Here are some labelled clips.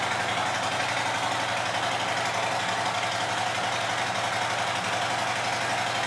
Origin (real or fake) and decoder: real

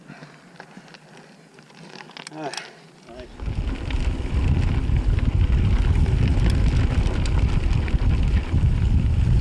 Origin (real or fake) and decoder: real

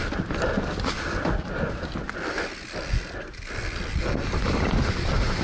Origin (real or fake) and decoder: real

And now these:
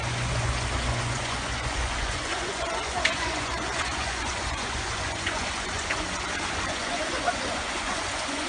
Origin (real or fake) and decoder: fake, vocoder, Vocos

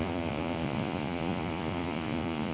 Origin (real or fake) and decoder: fake, vocoder, Vocos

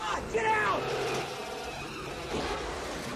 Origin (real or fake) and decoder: real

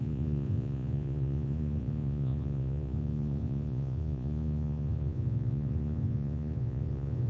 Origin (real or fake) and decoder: fake, vocoder, Vocos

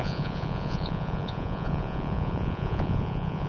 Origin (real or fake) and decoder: fake, vocoder, Vocos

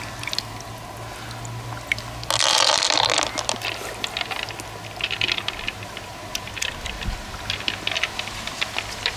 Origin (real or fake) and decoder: real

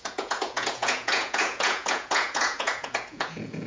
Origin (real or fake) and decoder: fake, vocoder, Vocos